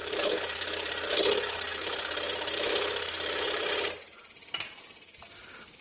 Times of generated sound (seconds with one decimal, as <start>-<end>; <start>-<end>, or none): 0.0-5.8